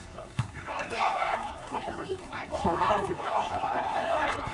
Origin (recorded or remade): remade